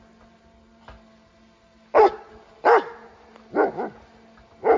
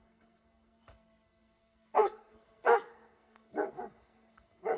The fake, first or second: second